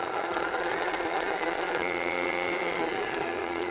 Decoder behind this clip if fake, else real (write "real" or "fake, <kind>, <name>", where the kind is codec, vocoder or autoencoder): fake, vocoder, Vocos